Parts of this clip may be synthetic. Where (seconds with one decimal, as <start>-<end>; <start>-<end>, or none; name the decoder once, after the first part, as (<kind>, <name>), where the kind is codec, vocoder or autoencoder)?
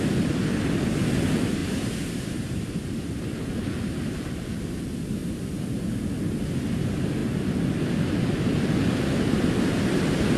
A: 1.6-3.1 (vocoder, BigVGAN v2); 5.2-5.9